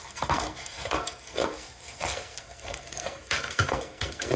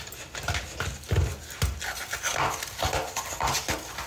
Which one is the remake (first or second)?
first